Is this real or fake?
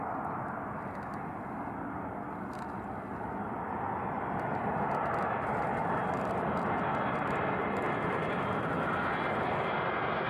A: real